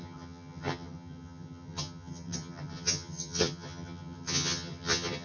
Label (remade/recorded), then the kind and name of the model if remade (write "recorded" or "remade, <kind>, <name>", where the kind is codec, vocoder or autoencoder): remade, vocoder, HiFi-GAN